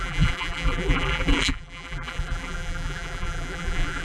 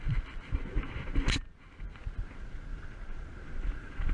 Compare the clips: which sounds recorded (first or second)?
second